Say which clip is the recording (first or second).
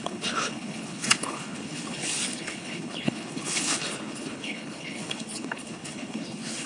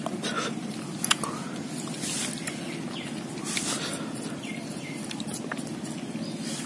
second